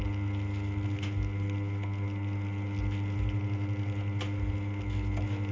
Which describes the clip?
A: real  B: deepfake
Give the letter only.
A